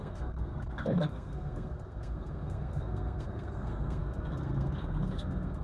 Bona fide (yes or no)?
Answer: no